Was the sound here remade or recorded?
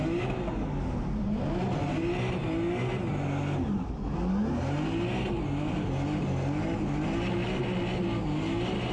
recorded